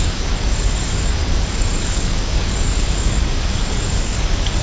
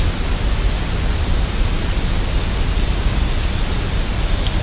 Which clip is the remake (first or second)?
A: first